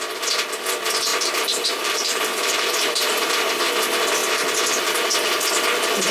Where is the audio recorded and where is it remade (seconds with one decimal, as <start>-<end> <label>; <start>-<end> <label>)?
0.0-1.1 recorded; 1.1-3.7 remade; 3.7-6.1 recorded